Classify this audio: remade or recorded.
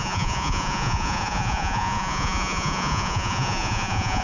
remade